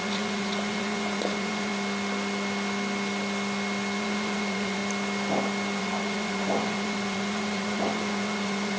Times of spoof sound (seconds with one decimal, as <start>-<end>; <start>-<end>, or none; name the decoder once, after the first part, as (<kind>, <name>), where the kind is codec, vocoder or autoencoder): 0.0-1.7 (vocoder, Vocos); 4.0-4.8; 5.8-8.8